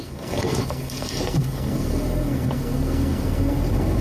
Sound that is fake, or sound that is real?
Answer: fake